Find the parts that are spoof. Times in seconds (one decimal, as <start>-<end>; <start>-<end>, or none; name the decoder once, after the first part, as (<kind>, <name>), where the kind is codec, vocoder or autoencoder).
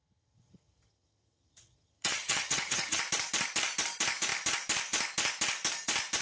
0.0-3.0 (vocoder, HiFi-GAN)